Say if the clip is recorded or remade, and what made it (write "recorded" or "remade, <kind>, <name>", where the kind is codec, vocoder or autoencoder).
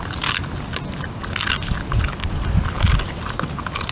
recorded